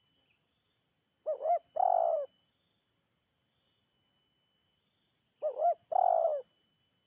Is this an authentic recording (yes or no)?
yes